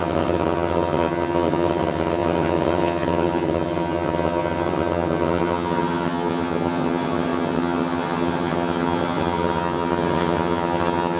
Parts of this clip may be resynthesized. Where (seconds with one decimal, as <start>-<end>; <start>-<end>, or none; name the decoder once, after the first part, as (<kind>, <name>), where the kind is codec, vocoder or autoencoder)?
0.0-11.2 (vocoder, HiFi-GAN)